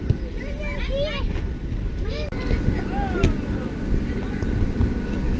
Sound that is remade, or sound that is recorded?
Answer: recorded